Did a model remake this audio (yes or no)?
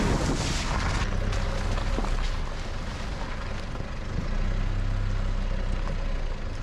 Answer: no